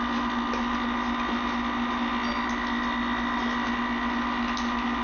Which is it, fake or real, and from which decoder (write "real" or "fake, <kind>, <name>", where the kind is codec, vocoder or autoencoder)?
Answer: real